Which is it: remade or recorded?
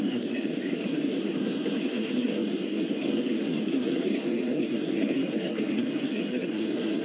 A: remade